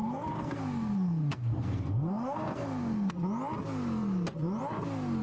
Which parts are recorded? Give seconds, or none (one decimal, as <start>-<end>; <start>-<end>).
3.1-5.2